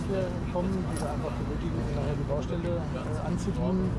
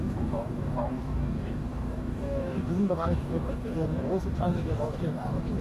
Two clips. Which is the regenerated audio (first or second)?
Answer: second